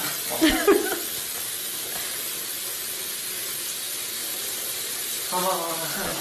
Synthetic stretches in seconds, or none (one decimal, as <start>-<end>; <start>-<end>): 4.2-5.4